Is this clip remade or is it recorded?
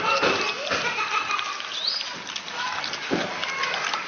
recorded